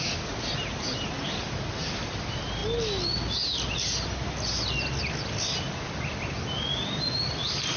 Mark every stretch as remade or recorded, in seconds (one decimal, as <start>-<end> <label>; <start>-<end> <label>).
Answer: 0.0-7.8 recorded